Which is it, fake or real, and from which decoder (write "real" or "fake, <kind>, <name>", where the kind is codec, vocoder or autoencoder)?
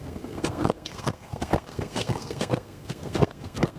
fake, codec, SNAC